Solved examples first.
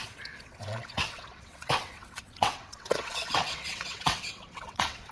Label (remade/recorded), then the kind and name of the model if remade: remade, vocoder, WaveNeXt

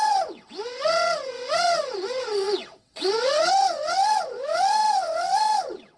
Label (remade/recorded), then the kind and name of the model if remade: remade, vocoder, WaveNeXt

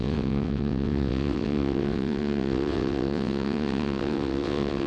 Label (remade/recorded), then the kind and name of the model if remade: remade, vocoder, WaveNeXt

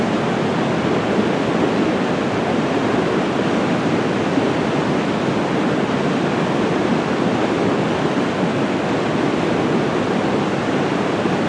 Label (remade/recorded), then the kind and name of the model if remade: recorded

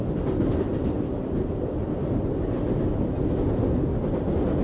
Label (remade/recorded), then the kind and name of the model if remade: recorded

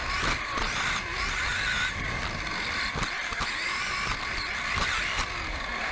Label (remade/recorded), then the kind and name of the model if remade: recorded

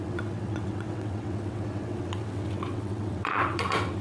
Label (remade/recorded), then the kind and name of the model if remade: remade, vocoder, WaveNeXt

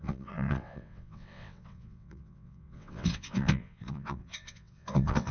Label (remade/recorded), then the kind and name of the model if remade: remade, vocoder, WaveNeXt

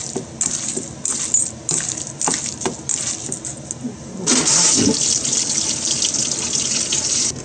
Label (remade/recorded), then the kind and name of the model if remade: recorded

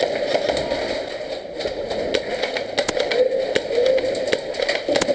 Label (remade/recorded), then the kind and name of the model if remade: recorded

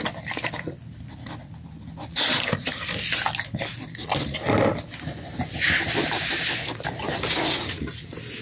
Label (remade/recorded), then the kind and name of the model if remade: recorded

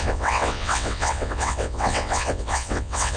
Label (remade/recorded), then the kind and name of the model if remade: remade, vocoder, WaveNeXt